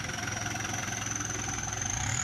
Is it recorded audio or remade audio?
remade